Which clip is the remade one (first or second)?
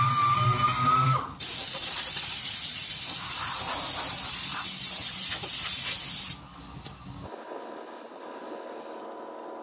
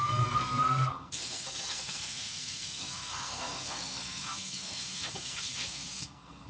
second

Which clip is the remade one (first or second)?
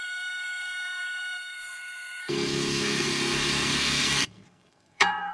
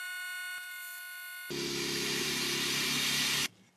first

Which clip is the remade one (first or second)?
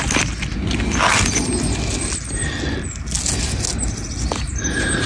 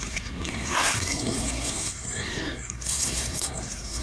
second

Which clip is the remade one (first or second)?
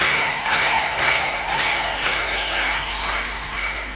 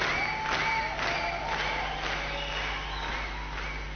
first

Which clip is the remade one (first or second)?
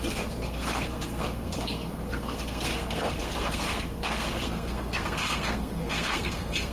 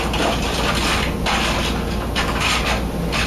first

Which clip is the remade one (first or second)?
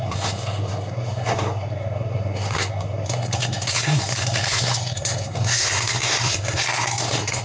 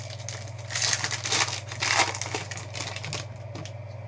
first